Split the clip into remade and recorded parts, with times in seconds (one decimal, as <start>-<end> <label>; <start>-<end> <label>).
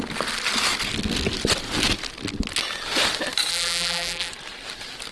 0.0-3.5 recorded; 3.5-4.3 remade; 4.3-5.1 recorded